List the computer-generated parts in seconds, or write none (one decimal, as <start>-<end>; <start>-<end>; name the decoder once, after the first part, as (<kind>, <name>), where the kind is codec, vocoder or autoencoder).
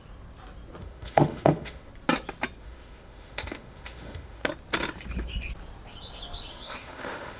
0.8-1.9 (autoencoder, DAC-VAE); 2.6-4.4; 6.5-7.4